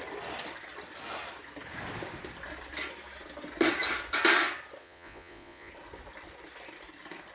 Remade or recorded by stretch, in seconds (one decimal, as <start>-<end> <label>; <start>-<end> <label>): 0.0-4.8 recorded; 4.8-5.7 remade; 5.7-7.3 recorded